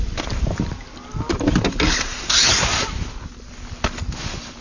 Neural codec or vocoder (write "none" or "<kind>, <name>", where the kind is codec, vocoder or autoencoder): none